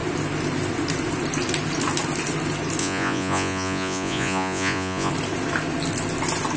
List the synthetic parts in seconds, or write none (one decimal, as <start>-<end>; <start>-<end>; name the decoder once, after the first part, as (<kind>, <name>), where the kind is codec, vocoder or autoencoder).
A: 2.8-5.1 (vocoder, Vocos)